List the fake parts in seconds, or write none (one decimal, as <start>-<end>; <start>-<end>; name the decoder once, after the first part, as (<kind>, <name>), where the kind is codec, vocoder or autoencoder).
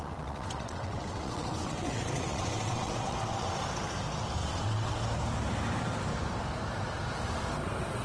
0.0-3.5 (vocoder, WaveNeXt); 4.4-5.0